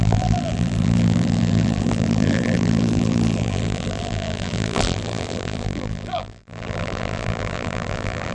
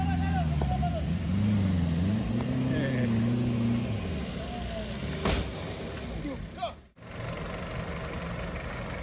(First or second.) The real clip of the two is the second